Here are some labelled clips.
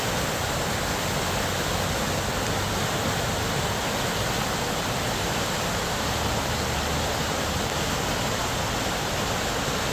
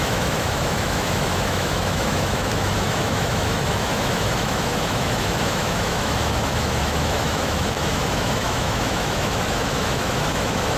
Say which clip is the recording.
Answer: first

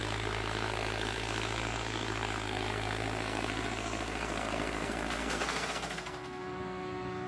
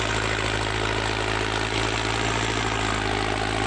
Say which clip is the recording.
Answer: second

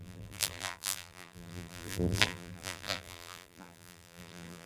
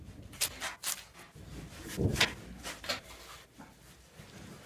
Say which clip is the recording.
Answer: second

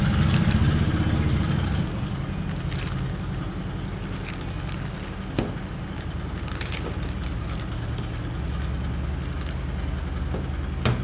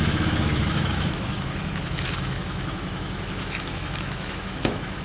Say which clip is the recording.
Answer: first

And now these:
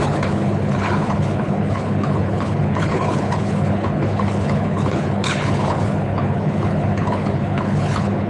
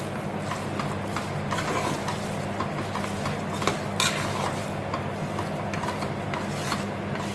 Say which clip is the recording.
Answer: second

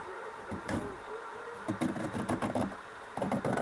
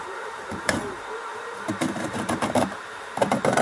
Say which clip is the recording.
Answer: first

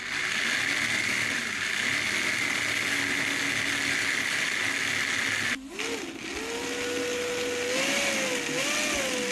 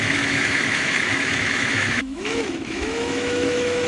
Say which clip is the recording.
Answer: first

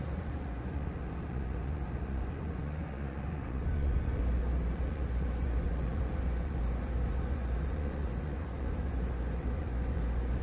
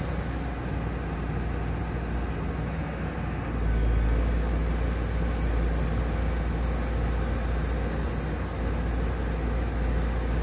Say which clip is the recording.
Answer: second